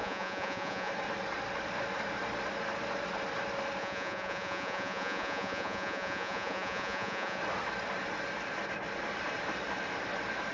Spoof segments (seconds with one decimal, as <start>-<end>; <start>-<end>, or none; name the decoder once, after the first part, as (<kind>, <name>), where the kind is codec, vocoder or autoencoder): 0.0-0.9 (vocoder, Vocos); 3.8-7.4